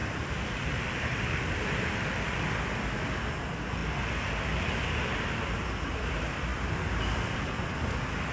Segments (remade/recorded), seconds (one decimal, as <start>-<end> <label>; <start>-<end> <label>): 0.0-1.2 remade; 1.2-8.3 recorded